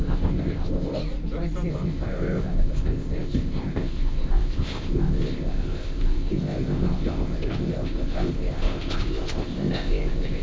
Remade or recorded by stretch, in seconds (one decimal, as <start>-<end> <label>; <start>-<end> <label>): 0.0-1.0 remade; 1.0-1.7 recorded; 1.7-10.4 remade